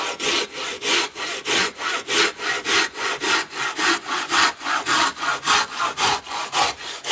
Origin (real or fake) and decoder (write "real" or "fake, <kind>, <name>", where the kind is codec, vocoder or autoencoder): fake, vocoder, Vocos